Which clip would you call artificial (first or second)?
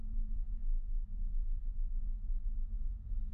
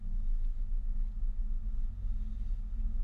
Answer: first